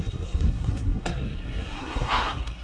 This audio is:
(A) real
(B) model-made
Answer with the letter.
B